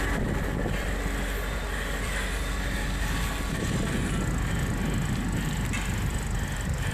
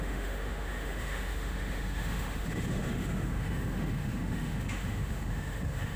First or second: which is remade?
second